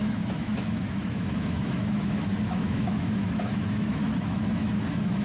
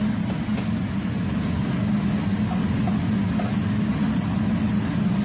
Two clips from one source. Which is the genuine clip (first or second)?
second